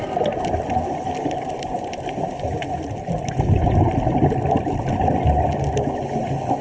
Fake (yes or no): no